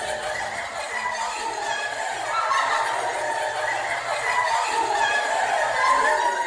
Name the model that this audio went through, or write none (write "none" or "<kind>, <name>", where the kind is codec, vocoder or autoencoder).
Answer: none